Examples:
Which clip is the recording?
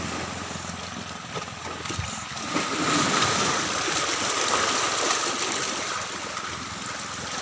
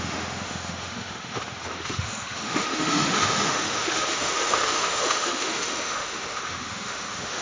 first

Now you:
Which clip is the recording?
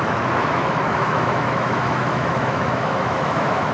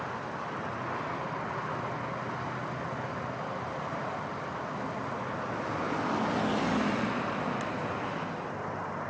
second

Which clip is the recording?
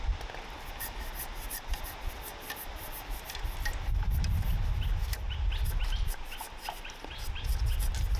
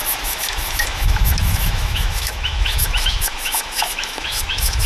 first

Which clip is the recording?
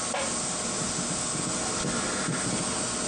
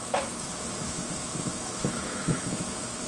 first